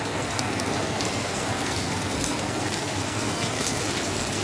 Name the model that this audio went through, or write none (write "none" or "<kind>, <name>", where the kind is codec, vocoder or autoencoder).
codec, SNAC